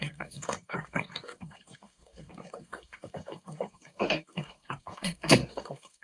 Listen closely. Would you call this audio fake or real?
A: fake